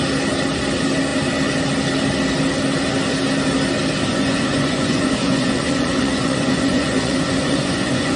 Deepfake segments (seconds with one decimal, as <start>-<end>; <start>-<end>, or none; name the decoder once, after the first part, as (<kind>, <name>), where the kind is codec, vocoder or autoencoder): 4.1-8.2 (vocoder, Vocos)